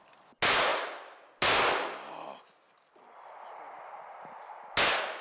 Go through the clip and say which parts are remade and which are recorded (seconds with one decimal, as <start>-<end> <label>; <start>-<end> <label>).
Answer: 0.0-5.2 recorded